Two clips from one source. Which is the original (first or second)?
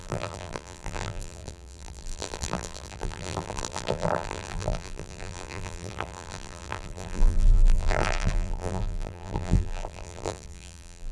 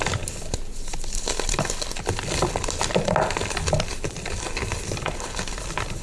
second